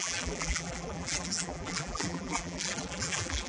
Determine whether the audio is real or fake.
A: fake